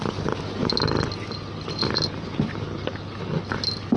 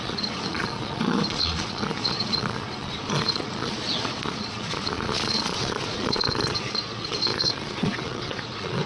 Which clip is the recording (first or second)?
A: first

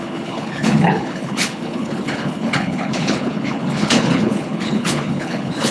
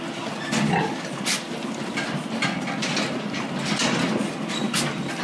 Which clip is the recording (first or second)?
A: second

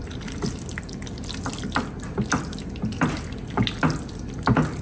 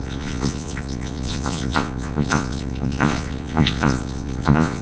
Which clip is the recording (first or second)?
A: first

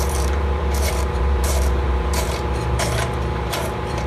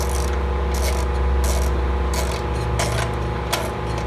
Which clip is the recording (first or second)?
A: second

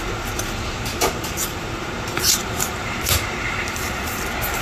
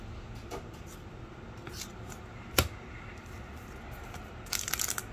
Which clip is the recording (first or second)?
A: second